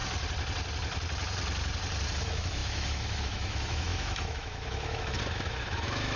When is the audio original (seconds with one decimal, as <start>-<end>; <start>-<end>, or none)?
0.0-2.2